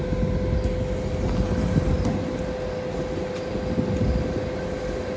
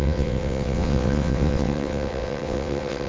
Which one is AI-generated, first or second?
second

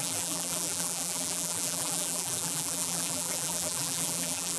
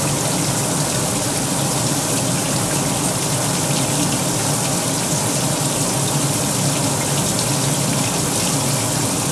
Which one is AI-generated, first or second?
first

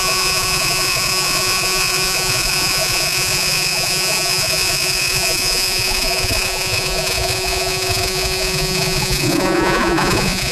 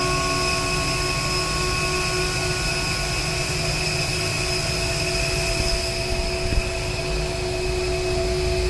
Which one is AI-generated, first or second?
first